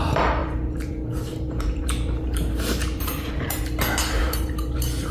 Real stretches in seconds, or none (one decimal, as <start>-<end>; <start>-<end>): 0.0-0.4; 0.9-1.3; 3.6-4.2